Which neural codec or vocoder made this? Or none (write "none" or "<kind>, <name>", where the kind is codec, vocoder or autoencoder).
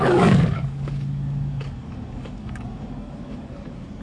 codec, DAC